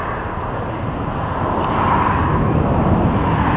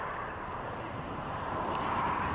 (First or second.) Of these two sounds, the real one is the first